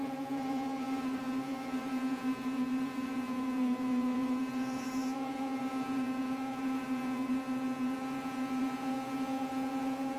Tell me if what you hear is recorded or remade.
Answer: remade